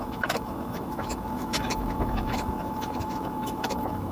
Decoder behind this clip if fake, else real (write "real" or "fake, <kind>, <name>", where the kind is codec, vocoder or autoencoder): fake, autoencoder, DAC-VAE